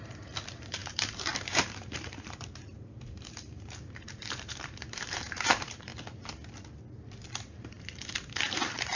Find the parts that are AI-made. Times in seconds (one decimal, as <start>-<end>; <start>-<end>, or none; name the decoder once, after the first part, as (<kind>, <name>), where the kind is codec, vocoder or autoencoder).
0.0-5.9 (vocoder, BigVGAN v2); 7.5-9.0